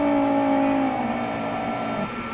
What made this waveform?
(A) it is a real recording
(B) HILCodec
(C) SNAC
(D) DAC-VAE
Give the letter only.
A